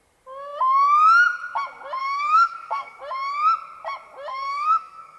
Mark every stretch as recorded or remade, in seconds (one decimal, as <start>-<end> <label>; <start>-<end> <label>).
0.0-2.0 recorded; 2.0-3.0 remade; 3.0-4.3 recorded; 4.3-5.2 remade